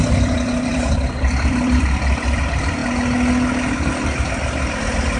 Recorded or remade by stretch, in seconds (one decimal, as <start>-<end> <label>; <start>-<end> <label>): 0.0-2.8 remade; 2.8-4.8 recorded; 4.8-5.2 remade